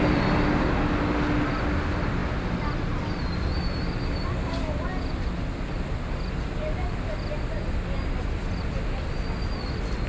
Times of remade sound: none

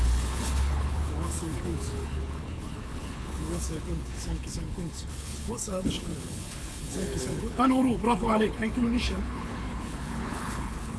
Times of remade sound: 0.0-11.0 (codec, HILCodec)